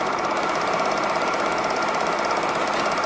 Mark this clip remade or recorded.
recorded